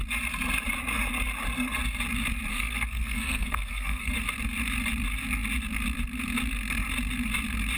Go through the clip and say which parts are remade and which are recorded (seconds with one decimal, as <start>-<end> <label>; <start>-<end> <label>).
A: 0.0-2.5 recorded; 2.5-4.1 remade; 4.1-7.8 recorded